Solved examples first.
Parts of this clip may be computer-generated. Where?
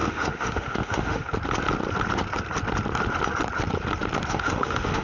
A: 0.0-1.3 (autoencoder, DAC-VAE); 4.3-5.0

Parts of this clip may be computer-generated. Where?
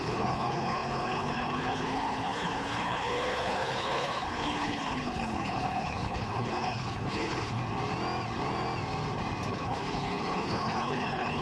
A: 0.0-7.6 (codec, HILCodec); 9.5-11.4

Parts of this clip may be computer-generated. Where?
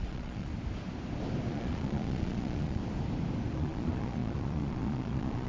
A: 0.0-0.5 (vocoder, Vocos); 1.5-2.8; 3.5-5.5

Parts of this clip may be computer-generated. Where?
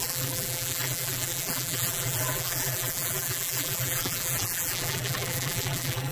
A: 0.0-6.1 (vocoder, BigVGAN v2)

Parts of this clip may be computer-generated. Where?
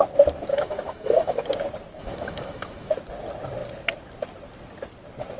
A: 0.5-1.4 (autoencoder, DAC-VAE); 2.0-2.9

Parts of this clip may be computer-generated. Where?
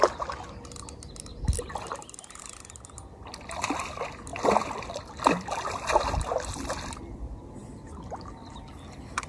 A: none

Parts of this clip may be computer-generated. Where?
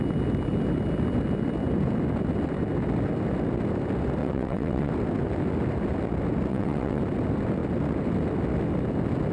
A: 4.2-4.9 (vocoder, WaveNeXt); 6.5-7.0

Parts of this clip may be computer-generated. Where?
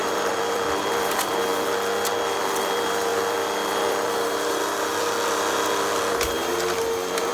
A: 0.0-1.5 (vocoder, BigVGAN v2); 2.1-7.3